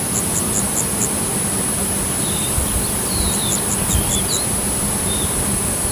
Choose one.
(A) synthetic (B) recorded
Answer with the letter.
B